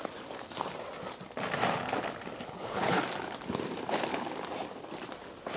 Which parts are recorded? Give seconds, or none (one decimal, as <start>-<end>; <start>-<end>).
0.0-2.5; 3.0-5.6